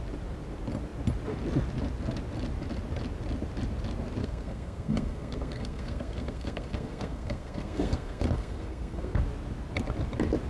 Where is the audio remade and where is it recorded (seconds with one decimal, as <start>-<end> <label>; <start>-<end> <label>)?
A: 0.0-4.2 recorded; 4.2-9.2 remade; 9.2-10.5 recorded